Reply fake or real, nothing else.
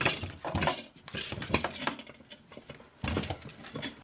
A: real